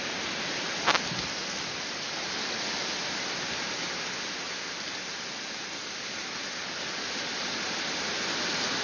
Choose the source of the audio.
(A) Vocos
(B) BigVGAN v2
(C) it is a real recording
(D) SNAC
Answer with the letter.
C